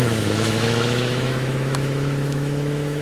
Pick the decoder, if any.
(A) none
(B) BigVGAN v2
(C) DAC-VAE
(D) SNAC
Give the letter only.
C